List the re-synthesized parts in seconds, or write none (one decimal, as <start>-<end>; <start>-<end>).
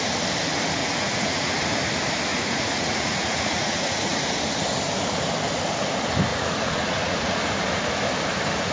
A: 0.8-1.5; 2.3-4.3; 6.3-7.4